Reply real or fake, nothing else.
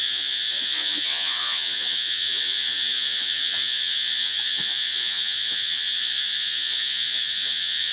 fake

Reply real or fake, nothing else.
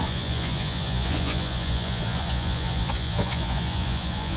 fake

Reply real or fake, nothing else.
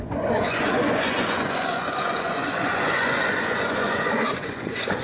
fake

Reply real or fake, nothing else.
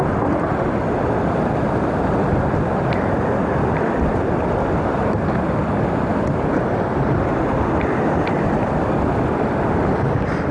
real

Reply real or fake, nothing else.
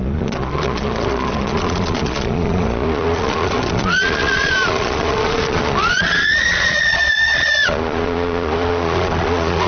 fake